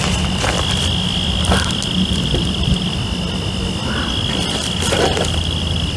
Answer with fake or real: real